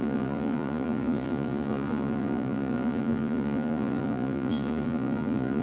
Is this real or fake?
fake